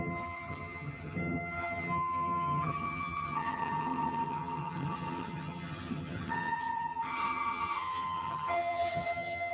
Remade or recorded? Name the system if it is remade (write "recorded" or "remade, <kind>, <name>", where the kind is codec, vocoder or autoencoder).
remade, vocoder, HiFi-GAN